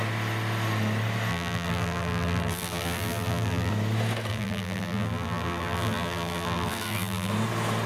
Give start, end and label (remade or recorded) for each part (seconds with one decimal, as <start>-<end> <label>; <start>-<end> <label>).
0.0-1.3 recorded; 1.3-3.7 remade; 3.7-4.3 recorded; 4.3-7.3 remade; 7.3-7.9 recorded